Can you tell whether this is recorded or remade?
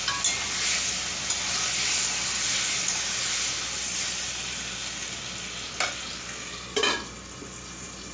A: recorded